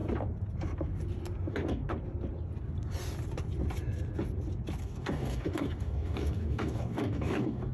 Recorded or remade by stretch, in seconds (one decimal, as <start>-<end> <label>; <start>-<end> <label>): 0.0-1.5 recorded; 1.5-1.9 remade; 1.9-4.8 recorded; 4.8-7.7 remade